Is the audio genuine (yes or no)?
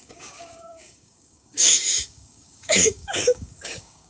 no